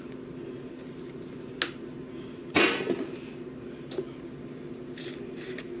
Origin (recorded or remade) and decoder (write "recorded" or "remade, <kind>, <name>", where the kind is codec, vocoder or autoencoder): recorded